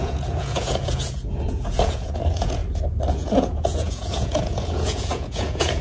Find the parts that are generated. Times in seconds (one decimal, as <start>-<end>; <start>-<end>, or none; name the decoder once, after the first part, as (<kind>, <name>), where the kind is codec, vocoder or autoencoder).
0.0-2.6 (vocoder, Vocos); 3.1-5.8